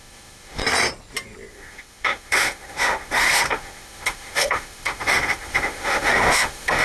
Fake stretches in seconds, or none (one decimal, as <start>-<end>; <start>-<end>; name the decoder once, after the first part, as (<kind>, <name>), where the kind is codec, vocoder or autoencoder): 0.0-0.6 (autoencoder, DAC-VAE); 1.5-6.8